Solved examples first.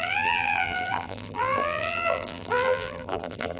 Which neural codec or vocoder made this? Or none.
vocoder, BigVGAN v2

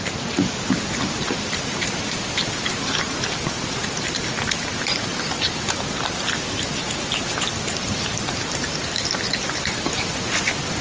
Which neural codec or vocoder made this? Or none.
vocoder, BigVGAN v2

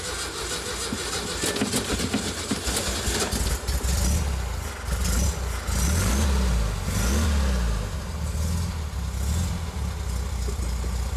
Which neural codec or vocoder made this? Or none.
none